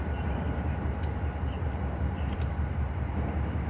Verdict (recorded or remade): remade